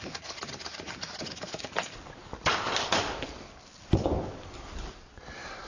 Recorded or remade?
recorded